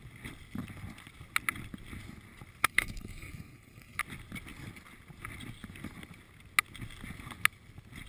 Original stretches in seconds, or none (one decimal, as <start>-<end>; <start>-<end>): 0.0-2.6; 4.0-8.1